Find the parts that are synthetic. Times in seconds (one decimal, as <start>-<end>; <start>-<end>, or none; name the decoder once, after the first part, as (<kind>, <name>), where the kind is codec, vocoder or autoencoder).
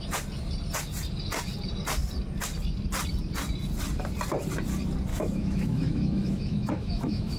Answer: 5.1-7.4 (autoencoder, DAC-VAE)